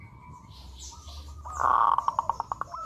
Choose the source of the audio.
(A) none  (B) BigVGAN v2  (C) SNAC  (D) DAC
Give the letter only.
A